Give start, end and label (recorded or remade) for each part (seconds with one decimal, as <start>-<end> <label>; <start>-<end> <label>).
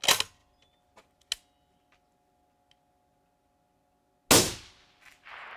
0.0-5.6 recorded